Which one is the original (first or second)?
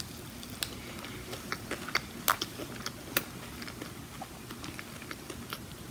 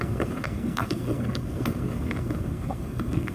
first